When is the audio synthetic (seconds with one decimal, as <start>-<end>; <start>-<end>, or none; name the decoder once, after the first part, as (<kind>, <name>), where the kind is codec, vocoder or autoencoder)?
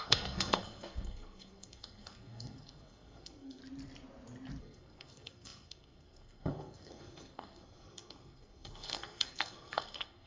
0.0-3.6 (codec, SNAC); 4.6-10.3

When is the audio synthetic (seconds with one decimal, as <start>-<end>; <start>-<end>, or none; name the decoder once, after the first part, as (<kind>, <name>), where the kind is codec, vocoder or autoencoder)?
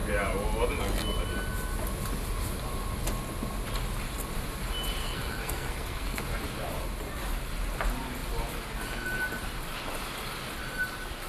5.0-6.2 (codec, SNAC)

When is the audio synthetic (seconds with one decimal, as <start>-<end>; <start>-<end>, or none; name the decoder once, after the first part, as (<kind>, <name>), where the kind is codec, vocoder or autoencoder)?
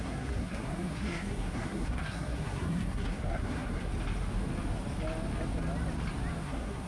0.0-3.9 (codec, SNAC); 6.4-6.9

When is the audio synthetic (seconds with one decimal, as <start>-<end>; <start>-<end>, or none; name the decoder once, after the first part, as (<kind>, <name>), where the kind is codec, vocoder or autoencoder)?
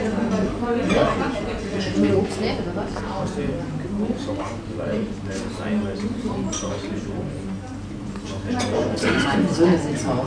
none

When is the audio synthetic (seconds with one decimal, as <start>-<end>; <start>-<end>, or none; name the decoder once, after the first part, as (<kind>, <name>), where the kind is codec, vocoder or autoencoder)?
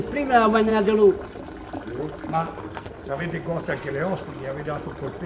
2.6-3.2 (codec, SNAC)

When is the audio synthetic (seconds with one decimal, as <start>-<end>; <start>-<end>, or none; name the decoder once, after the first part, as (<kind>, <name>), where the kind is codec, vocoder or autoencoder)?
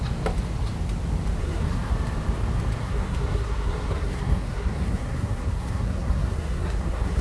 1.4-1.9 (codec, SNAC); 2.8-7.2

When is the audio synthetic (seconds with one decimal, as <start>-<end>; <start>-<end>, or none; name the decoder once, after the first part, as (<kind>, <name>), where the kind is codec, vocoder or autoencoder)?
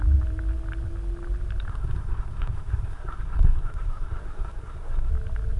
1.7-5.1 (codec, SNAC)